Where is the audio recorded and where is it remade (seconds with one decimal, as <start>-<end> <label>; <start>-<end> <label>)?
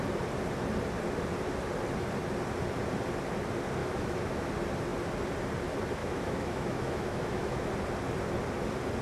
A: 0.0-3.8 recorded; 3.8-4.5 remade; 4.5-6.0 recorded; 6.0-7.7 remade; 7.7-9.0 recorded